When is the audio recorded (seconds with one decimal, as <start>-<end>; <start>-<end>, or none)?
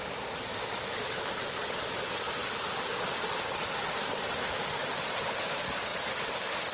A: 0.0-4.8; 5.5-6.7